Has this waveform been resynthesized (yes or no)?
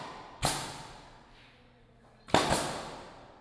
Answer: no